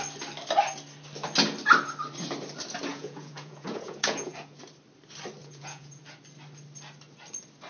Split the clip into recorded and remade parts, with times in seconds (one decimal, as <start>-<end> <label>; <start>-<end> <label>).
0.0-2.9 recorded; 2.9-4.6 remade; 4.6-5.4 recorded; 5.4-6.0 remade; 6.0-7.7 recorded